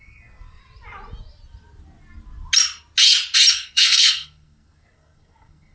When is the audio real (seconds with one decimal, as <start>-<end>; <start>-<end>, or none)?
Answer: 0.6-3.5